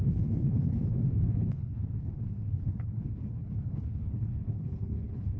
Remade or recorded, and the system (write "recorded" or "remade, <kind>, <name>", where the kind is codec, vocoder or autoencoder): remade, codec, HILCodec